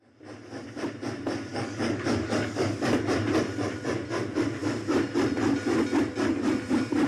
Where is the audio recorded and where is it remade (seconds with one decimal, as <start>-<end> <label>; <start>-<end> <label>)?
0.0-1.5 recorded; 1.5-3.1 remade; 3.1-7.1 recorded